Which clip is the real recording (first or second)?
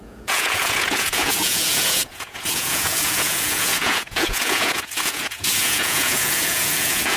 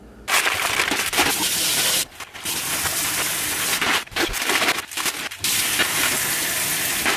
second